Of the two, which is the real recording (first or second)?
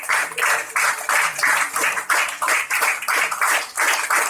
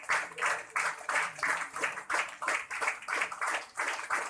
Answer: first